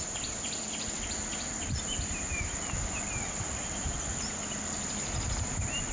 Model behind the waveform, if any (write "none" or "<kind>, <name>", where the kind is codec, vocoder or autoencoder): none